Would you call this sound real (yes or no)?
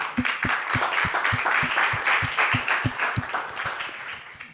yes